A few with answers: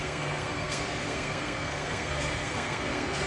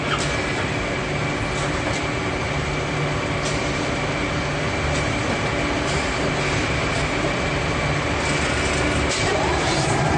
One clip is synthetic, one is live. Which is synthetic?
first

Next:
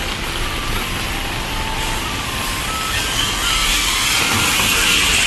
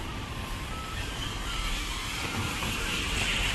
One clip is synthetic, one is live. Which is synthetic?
second